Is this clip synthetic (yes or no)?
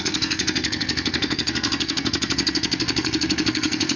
yes